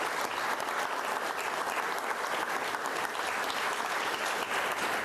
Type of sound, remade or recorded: recorded